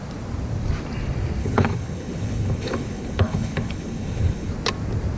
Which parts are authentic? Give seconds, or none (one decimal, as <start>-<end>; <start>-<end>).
0.0-1.4; 4.5-5.2